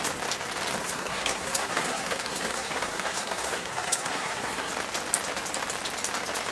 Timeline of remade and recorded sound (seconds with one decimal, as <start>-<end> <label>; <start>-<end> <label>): 0.0-0.8 recorded; 0.8-4.7 remade; 4.7-6.5 recorded